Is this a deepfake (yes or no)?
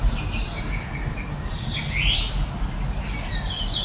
no